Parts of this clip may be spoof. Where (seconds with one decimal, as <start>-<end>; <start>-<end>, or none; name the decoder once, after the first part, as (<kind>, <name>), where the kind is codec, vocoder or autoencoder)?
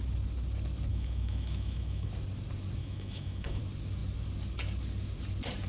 0.9-2.1 (autoencoder, DAC-VAE); 2.8-3.6